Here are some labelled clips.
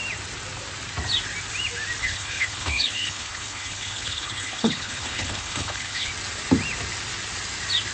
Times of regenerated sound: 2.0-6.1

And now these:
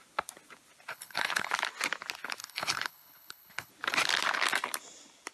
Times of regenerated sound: 0.9-1.5; 2.4-3.7

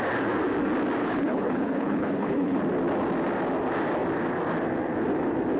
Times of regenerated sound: 1.0-2.6